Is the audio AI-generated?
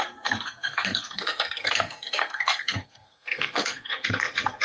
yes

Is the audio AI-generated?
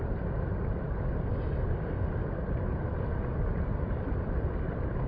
no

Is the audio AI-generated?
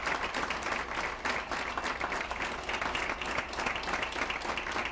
no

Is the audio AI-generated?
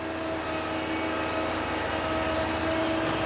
no